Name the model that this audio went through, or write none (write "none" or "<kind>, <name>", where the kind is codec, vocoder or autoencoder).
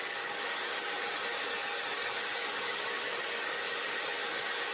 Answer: codec, DAC